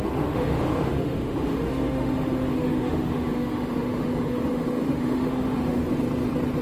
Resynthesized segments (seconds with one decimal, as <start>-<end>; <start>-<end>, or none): 0.0-5.8